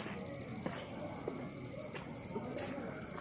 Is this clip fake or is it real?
real